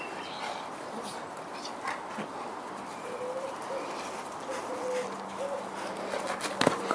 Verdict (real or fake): real